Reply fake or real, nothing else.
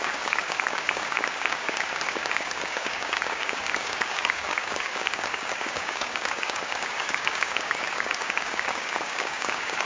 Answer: fake